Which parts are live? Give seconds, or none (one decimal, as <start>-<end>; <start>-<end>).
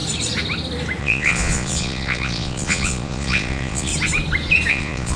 0.0-1.0; 3.9-4.7